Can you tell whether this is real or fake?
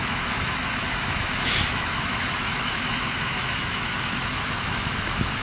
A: fake